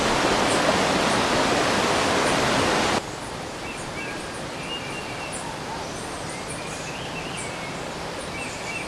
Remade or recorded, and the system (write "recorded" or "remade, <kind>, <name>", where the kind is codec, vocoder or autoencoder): recorded